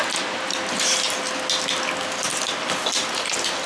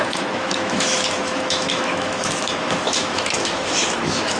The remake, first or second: second